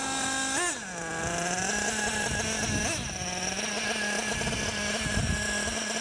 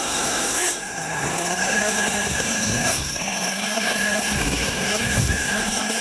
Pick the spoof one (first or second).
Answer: second